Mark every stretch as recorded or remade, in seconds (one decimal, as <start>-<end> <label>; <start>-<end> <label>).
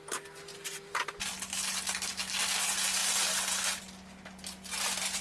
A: 0.0-0.5 recorded; 0.5-1.3 remade; 1.3-5.2 recorded